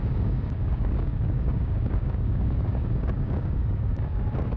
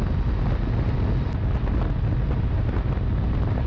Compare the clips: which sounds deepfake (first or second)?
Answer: first